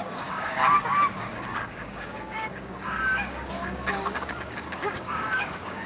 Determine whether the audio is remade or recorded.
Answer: remade